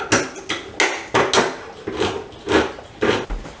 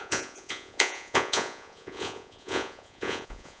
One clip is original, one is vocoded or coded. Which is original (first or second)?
first